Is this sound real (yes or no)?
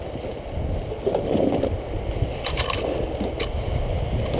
yes